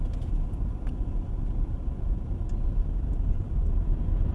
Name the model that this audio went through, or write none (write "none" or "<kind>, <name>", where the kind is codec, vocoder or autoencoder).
none